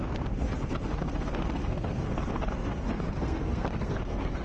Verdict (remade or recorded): remade